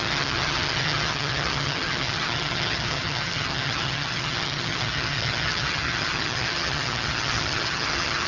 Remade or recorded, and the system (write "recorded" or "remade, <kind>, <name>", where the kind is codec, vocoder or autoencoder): remade, vocoder, HiFi-GAN